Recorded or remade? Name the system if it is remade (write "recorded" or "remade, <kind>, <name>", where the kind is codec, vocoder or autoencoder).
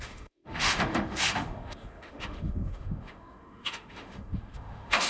remade, autoencoder, DAC-VAE